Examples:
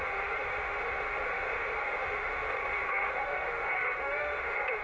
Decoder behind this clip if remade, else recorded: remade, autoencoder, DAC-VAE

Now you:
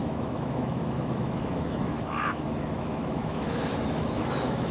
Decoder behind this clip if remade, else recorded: remade, autoencoder, DAC-VAE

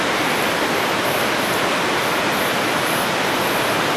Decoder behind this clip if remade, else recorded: recorded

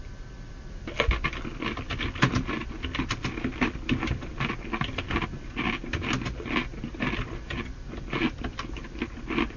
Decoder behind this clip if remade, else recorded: recorded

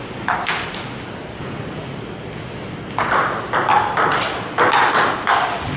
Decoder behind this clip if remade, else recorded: recorded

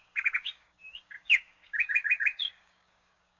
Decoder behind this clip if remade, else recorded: remade, codec, DAC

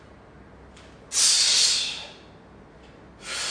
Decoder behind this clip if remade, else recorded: recorded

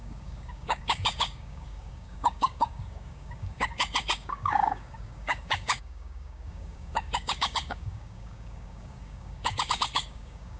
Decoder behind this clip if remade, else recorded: remade, codec, DAC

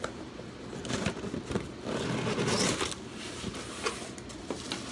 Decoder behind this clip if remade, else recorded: recorded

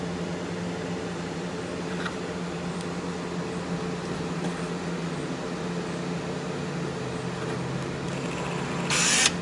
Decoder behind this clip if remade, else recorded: recorded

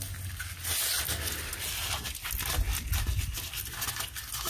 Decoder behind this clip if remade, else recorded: recorded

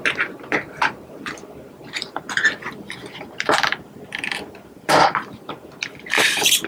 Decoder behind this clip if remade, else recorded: remade, vocoder, BigVGAN v2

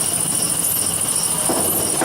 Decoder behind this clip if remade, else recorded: recorded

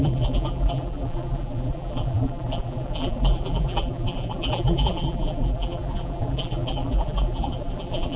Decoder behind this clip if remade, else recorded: remade, vocoder, BigVGAN v2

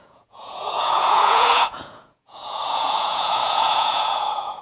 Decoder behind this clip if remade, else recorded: remade, vocoder, Vocos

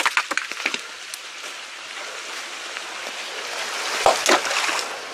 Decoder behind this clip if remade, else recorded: recorded